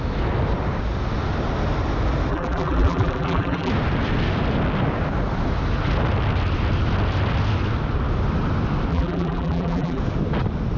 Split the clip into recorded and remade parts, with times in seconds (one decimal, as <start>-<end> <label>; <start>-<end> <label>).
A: 0.0-2.3 recorded; 2.3-3.7 remade; 3.7-8.9 recorded; 8.9-10.0 remade; 10.0-10.8 recorded